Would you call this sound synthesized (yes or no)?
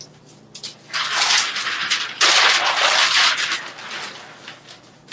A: no